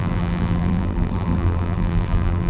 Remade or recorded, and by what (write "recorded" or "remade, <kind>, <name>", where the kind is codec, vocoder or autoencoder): remade, vocoder, BigVGAN v2